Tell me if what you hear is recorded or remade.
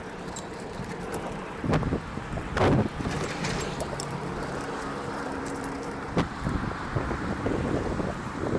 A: remade